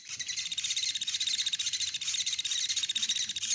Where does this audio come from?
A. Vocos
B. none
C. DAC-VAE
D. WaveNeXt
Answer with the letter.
B